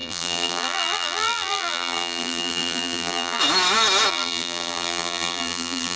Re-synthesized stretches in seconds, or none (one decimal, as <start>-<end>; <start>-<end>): 0.0-3.4; 4.1-6.0